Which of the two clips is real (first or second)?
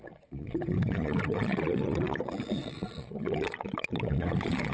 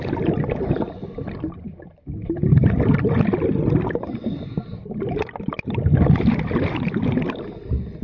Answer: second